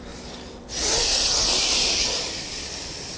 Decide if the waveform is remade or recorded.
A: recorded